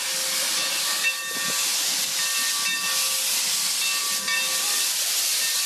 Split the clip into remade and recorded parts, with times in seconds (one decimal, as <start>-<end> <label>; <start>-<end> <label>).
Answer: 0.0-5.7 recorded